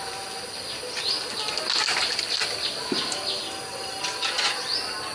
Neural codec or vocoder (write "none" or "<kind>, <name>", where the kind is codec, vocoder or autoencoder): none